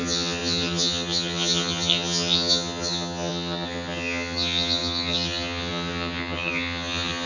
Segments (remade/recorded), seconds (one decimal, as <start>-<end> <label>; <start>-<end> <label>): 0.0-7.3 remade